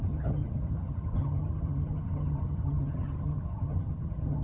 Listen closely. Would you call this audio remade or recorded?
remade